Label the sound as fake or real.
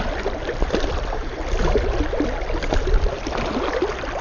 real